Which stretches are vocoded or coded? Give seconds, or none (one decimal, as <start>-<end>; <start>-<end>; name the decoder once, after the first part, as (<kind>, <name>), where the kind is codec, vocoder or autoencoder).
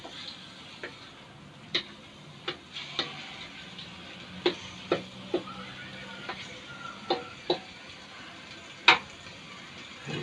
1.7-2.4 (vocoder, BigVGAN v2)